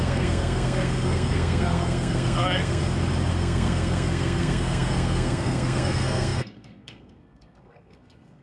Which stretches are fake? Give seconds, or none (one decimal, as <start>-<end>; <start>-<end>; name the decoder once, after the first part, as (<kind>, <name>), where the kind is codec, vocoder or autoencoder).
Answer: 0.0-2.8 (codec, SNAC); 3.3-8.4